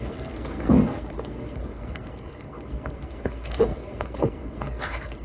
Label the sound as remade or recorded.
remade